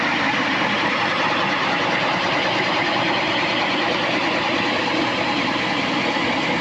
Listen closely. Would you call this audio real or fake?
real